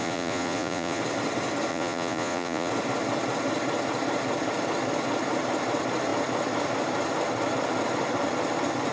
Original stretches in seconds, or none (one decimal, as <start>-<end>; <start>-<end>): 1.0-1.7; 2.7-8.9